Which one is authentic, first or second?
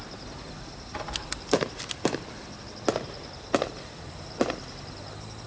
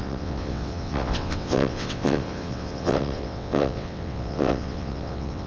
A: first